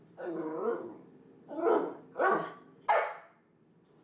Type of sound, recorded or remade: recorded